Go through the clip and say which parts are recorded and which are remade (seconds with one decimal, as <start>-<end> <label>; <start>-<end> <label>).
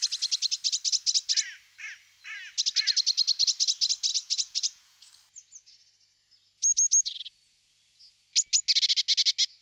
0.0-4.1 recorded; 4.1-5.1 remade; 5.1-9.6 recorded